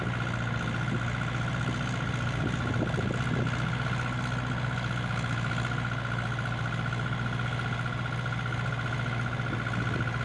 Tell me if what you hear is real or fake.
real